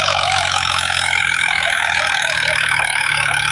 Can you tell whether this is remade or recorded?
remade